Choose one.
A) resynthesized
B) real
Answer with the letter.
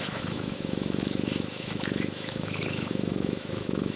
A